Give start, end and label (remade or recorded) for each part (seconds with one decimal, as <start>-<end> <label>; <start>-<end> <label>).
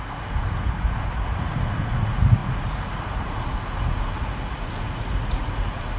0.0-6.0 remade